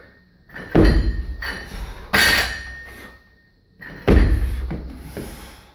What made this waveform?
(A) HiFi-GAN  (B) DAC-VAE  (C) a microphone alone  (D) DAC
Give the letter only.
C